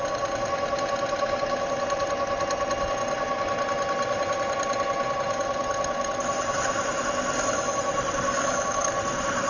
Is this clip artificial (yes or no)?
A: no